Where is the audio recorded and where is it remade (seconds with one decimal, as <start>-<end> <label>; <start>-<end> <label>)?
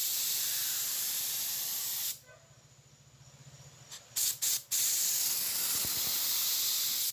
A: 0.0-0.9 remade; 0.9-7.1 recorded